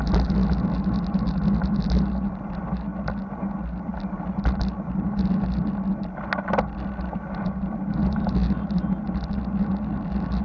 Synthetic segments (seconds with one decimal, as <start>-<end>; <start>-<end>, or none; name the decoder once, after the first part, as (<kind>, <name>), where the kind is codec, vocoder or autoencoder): none